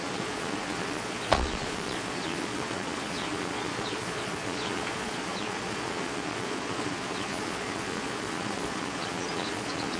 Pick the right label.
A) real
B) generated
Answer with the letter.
B